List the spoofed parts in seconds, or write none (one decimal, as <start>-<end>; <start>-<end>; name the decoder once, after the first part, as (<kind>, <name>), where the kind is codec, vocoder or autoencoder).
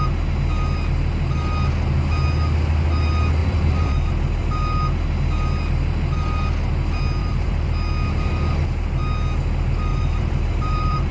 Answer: 3.4-4.1 (vocoder, BigVGAN v2); 7.2-7.7; 9.9-11.1